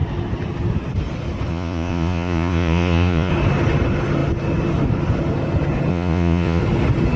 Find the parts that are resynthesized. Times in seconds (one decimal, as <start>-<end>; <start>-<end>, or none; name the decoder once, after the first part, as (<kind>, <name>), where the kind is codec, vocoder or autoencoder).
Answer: 1.5-3.3 (vocoder, Vocos); 5.9-6.6